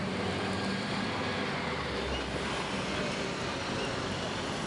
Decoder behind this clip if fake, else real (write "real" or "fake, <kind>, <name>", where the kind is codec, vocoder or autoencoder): real